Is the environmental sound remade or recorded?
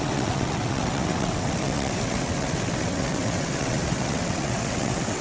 remade